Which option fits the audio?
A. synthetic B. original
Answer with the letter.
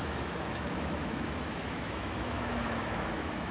A